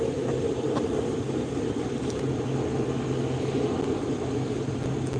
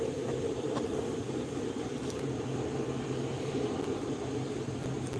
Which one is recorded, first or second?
first